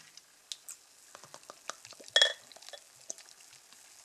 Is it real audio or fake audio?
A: real